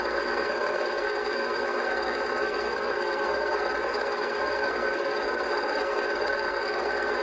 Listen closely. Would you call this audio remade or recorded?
remade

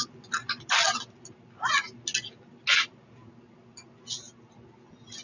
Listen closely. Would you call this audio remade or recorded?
recorded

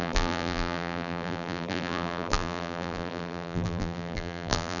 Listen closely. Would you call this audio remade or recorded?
remade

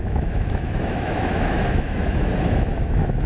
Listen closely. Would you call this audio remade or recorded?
remade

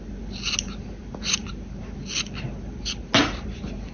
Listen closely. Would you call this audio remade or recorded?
recorded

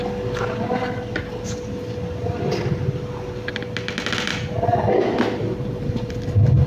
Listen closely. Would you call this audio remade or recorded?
recorded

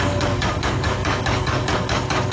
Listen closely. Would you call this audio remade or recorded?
remade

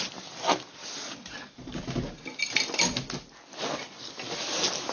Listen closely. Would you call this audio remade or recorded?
recorded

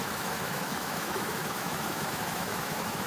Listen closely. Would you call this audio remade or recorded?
remade